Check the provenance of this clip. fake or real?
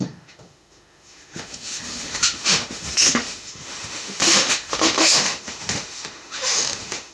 fake